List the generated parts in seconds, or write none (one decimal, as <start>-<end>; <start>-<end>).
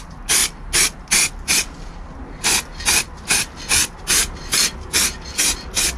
none